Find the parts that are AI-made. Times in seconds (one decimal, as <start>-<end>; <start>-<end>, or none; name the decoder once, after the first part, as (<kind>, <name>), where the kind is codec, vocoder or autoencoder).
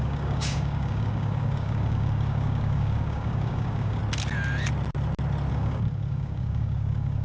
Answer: 0.0-4.0 (codec, DAC); 5.5-7.2